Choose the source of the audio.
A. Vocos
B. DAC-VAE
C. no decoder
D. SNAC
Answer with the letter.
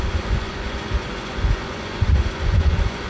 A